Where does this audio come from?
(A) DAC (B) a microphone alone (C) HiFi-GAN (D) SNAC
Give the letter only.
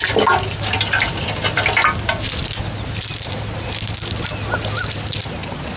B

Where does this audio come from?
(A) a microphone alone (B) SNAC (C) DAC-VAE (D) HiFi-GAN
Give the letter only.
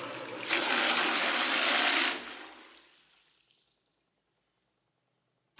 A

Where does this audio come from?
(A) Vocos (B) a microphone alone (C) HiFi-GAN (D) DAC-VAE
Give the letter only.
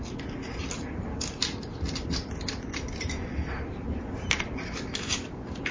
B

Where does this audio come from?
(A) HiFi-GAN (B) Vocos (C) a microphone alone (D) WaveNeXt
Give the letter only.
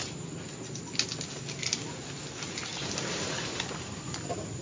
C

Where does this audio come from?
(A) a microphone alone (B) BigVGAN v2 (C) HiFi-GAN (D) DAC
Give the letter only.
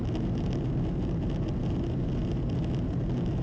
A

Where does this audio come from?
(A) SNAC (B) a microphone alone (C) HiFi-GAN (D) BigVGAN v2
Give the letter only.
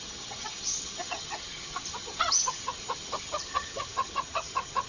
C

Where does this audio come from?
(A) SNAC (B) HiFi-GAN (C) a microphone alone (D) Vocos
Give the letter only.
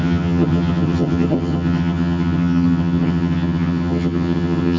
B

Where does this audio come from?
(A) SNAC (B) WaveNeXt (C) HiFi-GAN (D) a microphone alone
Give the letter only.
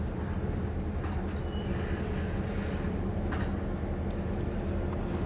D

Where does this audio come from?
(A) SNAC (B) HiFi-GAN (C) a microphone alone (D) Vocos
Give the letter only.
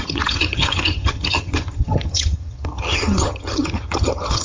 B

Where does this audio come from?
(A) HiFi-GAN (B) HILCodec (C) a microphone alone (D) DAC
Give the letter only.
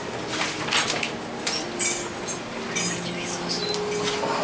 C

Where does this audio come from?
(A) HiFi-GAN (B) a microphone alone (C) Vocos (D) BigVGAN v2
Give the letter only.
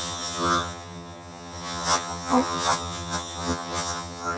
A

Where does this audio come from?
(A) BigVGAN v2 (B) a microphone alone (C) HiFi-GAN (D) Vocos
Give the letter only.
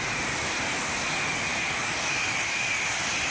B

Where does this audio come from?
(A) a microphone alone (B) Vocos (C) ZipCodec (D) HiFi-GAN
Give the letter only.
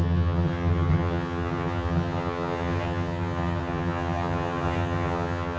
D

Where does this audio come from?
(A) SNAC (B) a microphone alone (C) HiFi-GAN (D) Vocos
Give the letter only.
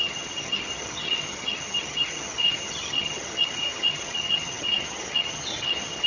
C